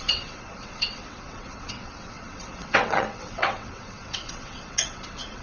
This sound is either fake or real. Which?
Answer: fake